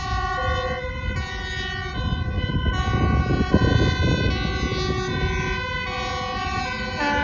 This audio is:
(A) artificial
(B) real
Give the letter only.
B